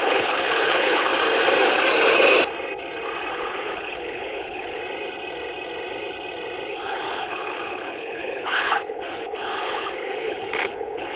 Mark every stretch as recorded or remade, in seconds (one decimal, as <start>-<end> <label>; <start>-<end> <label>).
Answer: 0.0-1.1 remade; 1.1-3.3 recorded; 3.3-4.8 remade; 4.8-6.7 recorded; 6.7-11.2 remade